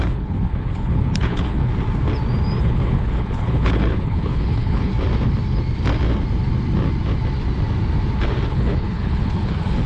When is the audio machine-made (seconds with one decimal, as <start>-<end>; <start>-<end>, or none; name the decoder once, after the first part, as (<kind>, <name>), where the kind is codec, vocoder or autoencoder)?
0.0-1.7 (codec, HILCodec); 2.6-4.9; 8.5-9.9